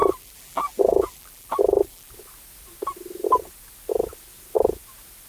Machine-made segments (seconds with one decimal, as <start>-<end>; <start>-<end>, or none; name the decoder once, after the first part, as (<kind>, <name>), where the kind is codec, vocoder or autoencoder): 0.0-2.1 (vocoder, BigVGAN v2)